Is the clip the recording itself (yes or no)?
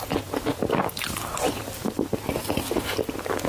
yes